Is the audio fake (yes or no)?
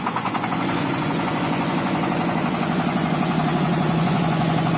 yes